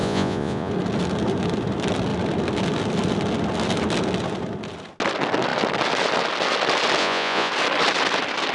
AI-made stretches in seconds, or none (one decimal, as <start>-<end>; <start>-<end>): 0.0-0.7; 7.0-7.5